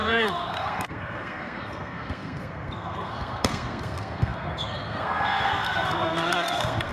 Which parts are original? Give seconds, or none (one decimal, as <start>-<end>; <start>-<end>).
none